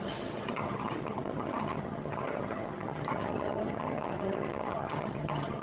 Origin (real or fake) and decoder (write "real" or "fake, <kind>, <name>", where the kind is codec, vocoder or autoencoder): fake, vocoder, HiFi-GAN